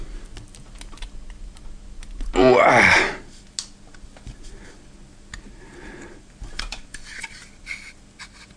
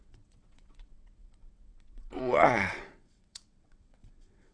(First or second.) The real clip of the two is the first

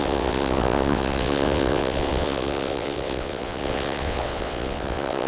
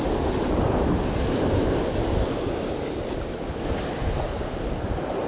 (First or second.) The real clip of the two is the second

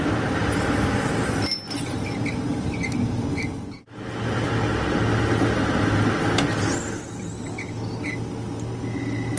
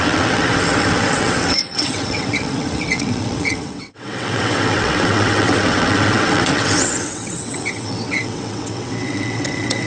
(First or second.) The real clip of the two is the first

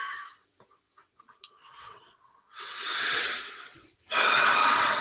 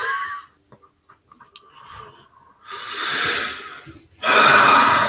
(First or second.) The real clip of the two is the second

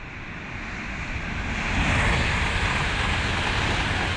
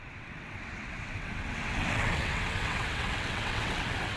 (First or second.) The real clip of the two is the first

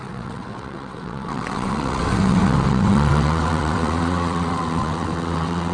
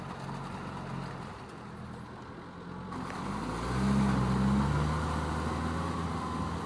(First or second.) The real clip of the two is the second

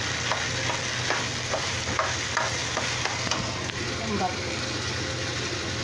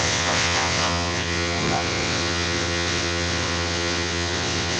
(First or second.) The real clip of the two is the first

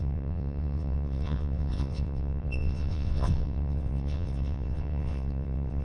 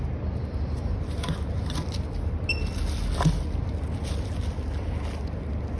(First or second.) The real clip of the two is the second